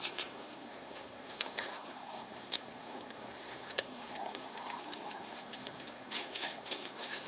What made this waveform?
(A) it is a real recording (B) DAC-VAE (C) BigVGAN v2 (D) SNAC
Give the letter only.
D